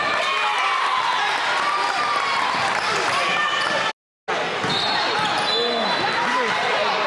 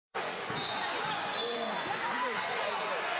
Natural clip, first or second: first